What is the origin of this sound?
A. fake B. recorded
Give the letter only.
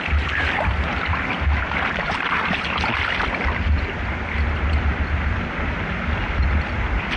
B